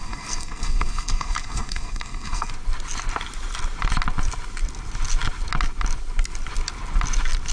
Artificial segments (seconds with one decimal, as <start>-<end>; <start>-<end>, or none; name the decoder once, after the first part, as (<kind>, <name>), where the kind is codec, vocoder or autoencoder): 0.0-2.5 (codec, SNAC)